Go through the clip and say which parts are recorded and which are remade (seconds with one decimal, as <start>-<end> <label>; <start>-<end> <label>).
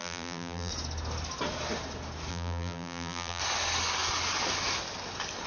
0.0-0.7 remade; 0.7-2.3 recorded; 2.3-3.4 remade; 3.4-5.5 recorded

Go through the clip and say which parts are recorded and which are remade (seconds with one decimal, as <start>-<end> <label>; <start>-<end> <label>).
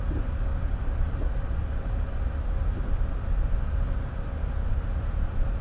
0.0-5.6 recorded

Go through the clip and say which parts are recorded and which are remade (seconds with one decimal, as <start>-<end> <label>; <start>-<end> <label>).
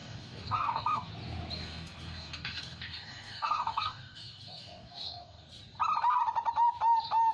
0.0-1.1 remade; 1.1-1.6 recorded; 1.6-5.5 remade; 5.5-7.3 recorded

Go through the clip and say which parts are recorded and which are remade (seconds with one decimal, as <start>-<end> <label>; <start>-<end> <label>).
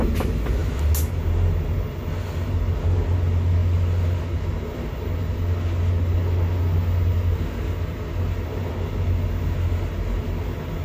0.0-10.8 recorded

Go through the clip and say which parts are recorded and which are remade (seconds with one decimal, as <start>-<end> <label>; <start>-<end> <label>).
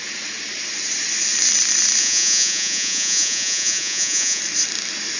0.0-2.0 recorded; 2.0-4.4 remade; 4.4-5.2 recorded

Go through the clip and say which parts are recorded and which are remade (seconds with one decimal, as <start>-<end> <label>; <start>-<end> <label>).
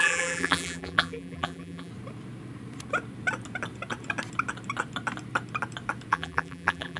0.0-1.9 remade; 1.9-6.1 recorded; 6.1-7.0 remade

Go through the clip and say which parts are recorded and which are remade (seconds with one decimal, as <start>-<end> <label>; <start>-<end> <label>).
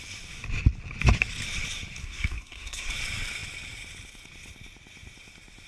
0.0-2.0 recorded; 2.0-2.9 remade; 2.9-5.7 recorded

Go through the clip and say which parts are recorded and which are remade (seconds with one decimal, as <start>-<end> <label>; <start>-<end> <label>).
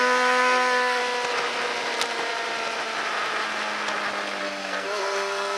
0.0-1.0 remade; 1.0-4.4 recorded; 4.4-5.6 remade